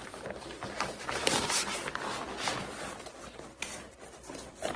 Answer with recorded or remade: remade